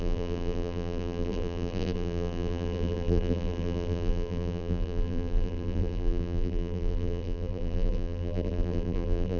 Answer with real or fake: fake